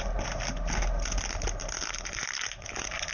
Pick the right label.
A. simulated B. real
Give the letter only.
B